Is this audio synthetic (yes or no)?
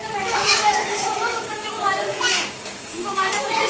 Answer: yes